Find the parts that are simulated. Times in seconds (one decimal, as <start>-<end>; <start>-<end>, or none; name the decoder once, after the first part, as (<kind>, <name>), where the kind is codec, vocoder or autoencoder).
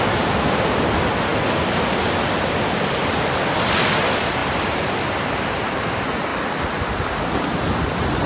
none